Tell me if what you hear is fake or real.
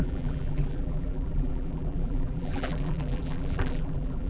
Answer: fake